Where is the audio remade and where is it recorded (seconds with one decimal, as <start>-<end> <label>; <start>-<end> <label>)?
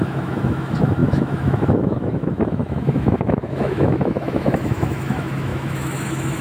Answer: 0.0-6.4 remade